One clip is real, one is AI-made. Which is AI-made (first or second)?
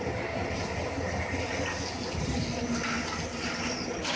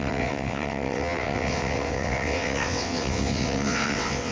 second